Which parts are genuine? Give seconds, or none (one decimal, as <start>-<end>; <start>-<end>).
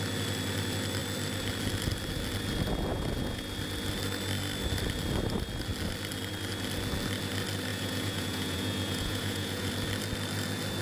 0.0-2.9; 3.4-7.7; 9.7-10.8